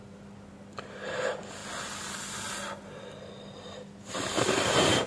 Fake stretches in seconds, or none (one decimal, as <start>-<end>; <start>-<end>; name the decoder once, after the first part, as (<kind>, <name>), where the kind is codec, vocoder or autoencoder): none